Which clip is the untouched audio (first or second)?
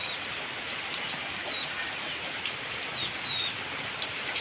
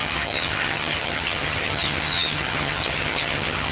first